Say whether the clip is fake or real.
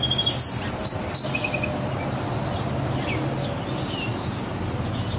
real